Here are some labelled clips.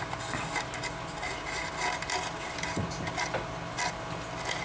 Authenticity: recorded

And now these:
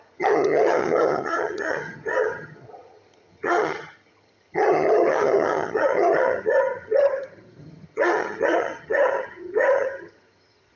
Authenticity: remade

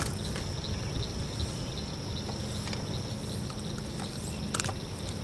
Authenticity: recorded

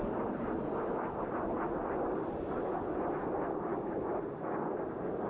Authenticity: recorded